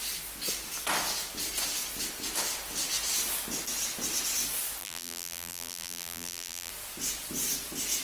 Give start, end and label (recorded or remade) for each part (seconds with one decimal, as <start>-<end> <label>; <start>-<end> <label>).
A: 0.0-4.8 recorded; 4.8-6.7 remade; 6.7-8.0 recorded